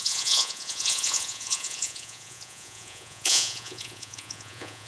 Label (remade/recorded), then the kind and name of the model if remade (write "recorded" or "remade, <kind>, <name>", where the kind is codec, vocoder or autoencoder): remade, vocoder, Vocos